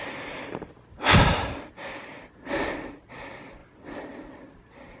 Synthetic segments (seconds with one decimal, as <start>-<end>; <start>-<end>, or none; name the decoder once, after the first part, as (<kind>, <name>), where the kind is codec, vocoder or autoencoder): none